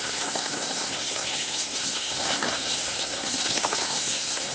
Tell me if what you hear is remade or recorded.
remade